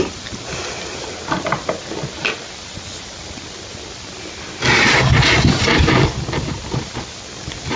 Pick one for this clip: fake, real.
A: real